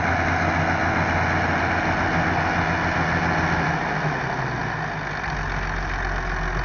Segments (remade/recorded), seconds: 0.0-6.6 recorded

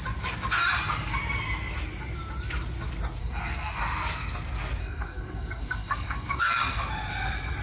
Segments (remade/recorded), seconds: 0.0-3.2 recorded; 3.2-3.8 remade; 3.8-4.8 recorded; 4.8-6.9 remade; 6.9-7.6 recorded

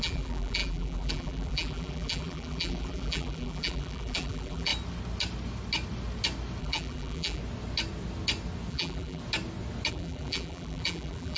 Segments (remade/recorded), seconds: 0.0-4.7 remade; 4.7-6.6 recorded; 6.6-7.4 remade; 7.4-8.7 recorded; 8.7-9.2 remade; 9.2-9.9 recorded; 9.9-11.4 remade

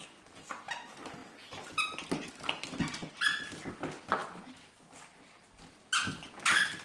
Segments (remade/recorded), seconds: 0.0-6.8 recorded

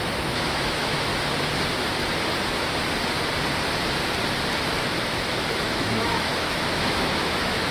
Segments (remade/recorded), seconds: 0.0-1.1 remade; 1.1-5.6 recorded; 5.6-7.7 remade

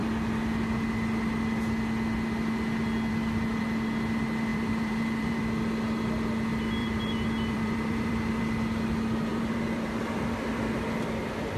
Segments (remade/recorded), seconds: 0.0-4.5 recorded; 4.5-5.4 remade; 5.4-6.8 recorded; 6.8-8.4 remade; 8.4-9.3 recorded; 9.3-10.8 remade; 10.8-11.6 recorded

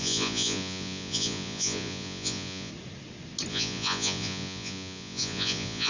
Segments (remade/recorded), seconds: 0.0-2.7 remade; 2.7-3.5 recorded; 3.5-5.9 remade

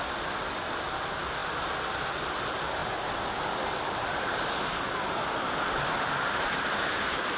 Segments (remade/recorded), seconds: 0.0-7.4 recorded